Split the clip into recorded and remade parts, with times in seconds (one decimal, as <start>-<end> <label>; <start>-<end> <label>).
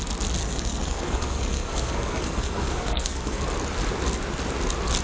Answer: 0.0-0.4 recorded; 0.4-3.4 remade; 3.4-5.0 recorded